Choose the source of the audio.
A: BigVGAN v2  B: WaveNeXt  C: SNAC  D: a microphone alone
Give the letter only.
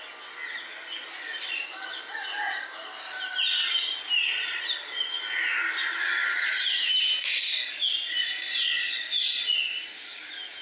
D